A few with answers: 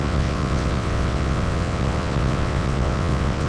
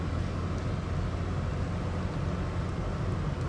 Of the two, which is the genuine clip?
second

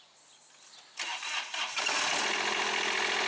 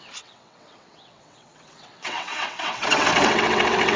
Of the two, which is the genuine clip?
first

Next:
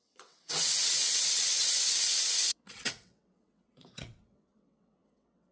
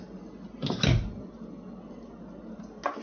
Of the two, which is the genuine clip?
second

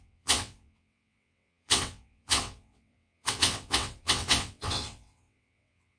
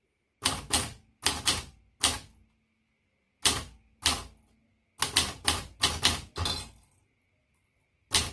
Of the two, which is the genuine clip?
second